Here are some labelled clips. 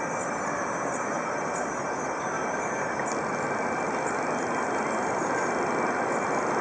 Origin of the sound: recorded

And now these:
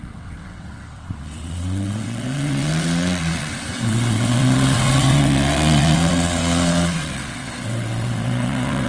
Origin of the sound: remade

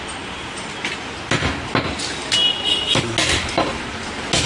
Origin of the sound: recorded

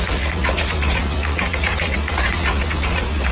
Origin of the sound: remade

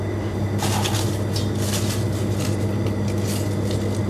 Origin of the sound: recorded